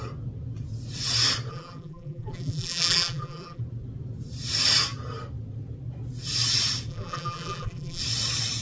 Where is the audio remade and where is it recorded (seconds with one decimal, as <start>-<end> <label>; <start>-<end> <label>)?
0.0-1.5 recorded; 1.5-3.6 remade; 3.6-6.9 recorded; 6.9-8.0 remade; 8.0-8.6 recorded